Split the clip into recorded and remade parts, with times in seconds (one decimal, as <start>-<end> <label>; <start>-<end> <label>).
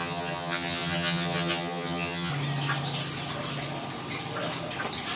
0.0-2.3 remade; 2.3-5.2 recorded